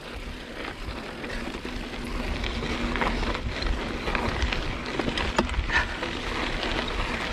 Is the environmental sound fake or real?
real